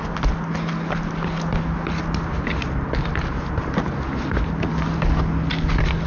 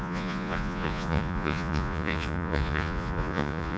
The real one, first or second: first